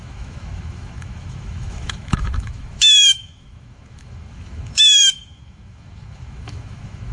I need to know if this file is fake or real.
fake